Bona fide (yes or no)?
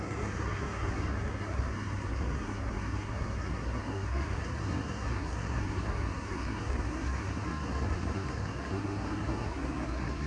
no